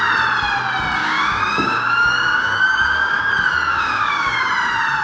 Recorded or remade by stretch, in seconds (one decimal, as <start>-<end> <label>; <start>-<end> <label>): 0.0-1.0 recorded; 1.0-3.3 remade; 3.3-3.7 recorded; 3.7-4.5 remade; 4.5-5.0 recorded